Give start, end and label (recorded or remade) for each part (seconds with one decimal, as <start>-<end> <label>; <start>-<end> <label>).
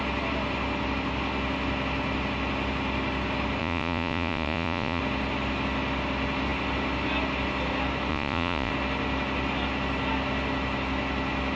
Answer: 0.0-3.6 recorded; 3.6-5.0 remade; 5.0-8.1 recorded; 8.1-8.7 remade; 8.7-11.6 recorded